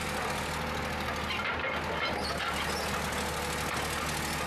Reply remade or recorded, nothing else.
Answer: recorded